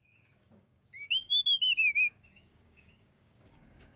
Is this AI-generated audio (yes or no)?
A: yes